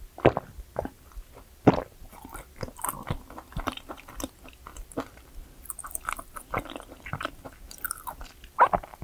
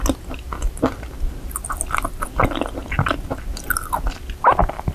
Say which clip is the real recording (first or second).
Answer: second